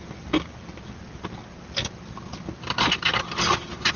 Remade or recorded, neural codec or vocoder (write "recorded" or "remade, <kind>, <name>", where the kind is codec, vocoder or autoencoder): recorded